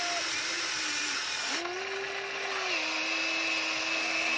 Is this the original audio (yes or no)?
yes